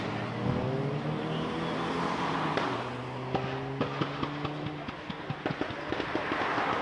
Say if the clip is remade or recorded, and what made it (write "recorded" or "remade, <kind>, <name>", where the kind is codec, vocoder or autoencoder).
recorded